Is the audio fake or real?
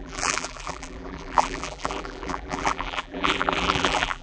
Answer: fake